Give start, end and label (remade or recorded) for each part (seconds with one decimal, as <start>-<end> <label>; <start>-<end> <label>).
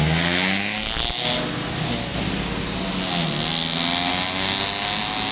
0.0-5.3 recorded